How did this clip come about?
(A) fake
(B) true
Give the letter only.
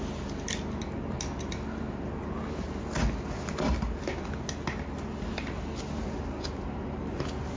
B